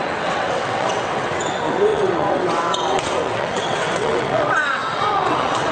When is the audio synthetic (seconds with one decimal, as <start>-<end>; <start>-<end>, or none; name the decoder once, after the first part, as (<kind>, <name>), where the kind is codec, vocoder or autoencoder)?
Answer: 0.0-5.7 (vocoder, WaveNeXt)